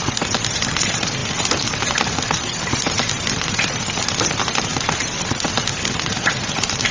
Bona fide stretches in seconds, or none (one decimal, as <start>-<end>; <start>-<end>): 1.2-3.6